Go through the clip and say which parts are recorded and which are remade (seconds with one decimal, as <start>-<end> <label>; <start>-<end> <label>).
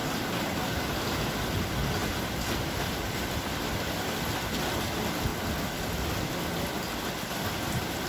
0.0-1.4 remade; 1.4-2.0 recorded; 2.0-3.0 remade; 3.0-8.1 recorded